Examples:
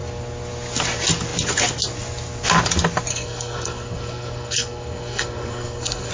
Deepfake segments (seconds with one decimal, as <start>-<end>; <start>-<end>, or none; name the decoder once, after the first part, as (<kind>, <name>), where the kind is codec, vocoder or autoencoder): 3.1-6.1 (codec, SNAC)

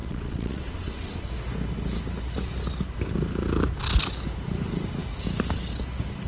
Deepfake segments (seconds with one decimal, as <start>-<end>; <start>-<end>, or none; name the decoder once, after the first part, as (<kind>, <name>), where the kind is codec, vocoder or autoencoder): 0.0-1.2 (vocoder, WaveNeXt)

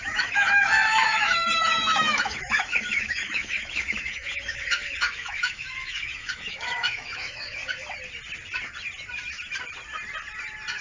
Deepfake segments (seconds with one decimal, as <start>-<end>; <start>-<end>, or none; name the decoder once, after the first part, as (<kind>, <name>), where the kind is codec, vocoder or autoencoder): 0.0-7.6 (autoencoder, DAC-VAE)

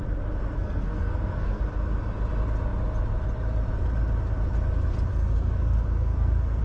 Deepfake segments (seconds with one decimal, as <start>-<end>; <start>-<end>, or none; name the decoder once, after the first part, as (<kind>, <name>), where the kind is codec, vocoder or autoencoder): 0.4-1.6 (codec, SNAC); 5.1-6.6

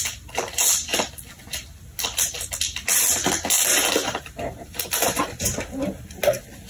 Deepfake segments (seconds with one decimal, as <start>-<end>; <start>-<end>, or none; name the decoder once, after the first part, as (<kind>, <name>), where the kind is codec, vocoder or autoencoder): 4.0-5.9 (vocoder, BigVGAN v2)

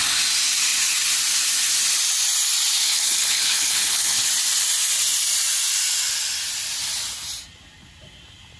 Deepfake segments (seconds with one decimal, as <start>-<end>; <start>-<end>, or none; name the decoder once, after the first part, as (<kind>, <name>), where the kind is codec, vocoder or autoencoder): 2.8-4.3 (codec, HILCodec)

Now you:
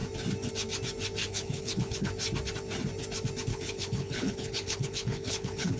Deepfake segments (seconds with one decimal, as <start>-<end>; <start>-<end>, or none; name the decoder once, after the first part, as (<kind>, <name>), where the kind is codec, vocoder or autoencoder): 1.2-2.1 (codec, HILCodec); 3.5-5.8